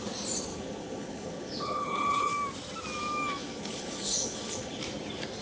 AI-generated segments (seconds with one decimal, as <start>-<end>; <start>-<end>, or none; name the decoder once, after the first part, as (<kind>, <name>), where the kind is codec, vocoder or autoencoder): 0.5-2.3 (codec, HILCodec); 3.4-4.8